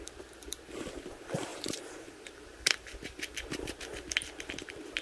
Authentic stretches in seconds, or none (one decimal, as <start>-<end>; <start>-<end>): 0.0-1.5; 3.8-5.0